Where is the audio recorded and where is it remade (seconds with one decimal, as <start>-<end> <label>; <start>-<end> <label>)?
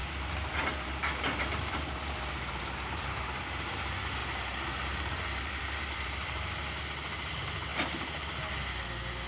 0.0-3.4 remade; 3.4-4.2 recorded; 4.2-6.7 remade; 6.7-9.3 recorded